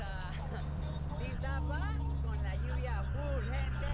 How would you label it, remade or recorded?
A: recorded